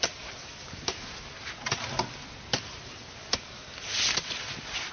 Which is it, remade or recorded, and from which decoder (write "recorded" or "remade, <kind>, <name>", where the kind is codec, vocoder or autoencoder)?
recorded